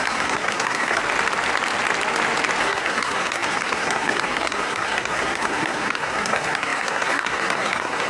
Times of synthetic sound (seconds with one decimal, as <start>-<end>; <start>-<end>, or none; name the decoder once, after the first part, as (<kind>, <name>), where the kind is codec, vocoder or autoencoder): 0.0-1.0 (codec, SNAC); 2.6-8.1